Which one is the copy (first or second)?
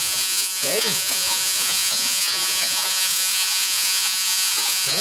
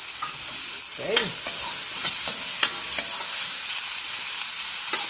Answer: first